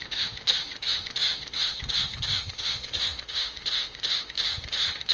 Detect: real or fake fake